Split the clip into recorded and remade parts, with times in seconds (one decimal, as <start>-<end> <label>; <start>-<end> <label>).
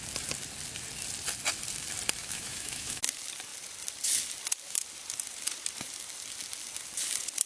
0.0-2.2 recorded; 2.2-3.0 remade; 3.0-7.5 recorded